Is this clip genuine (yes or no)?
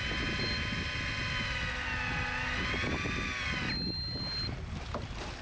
yes